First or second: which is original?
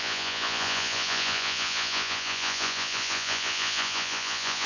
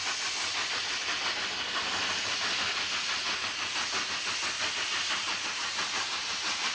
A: second